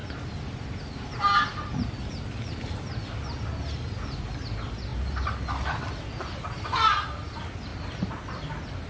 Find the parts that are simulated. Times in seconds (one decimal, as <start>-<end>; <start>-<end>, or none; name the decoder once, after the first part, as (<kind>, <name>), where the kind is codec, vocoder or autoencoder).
4.9-5.8 (vocoder, BigVGAN v2)